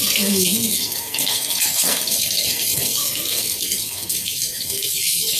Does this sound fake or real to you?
fake